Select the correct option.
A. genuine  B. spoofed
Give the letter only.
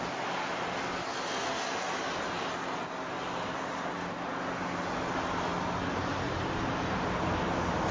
A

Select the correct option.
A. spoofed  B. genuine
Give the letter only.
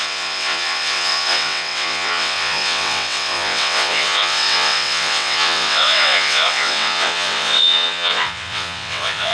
A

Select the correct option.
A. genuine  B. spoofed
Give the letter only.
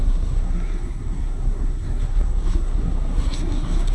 B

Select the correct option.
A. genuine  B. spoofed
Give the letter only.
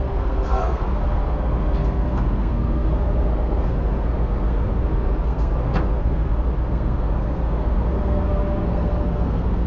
B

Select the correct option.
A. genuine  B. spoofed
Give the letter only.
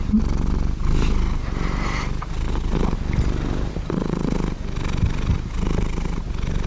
A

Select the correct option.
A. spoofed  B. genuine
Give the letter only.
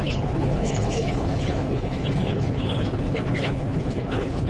A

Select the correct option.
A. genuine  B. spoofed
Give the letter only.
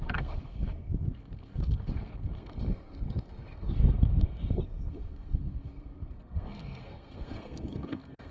B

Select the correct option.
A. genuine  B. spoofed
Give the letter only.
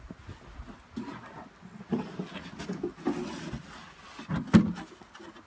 A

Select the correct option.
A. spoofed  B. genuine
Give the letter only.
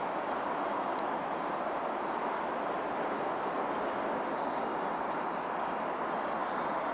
B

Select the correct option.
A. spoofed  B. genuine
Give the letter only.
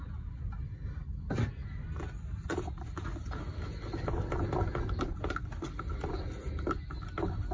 B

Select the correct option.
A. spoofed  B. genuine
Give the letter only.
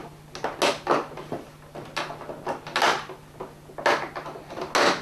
B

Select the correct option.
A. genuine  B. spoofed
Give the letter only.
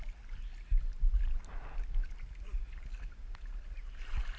A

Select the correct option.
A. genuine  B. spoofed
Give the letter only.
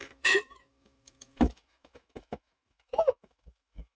B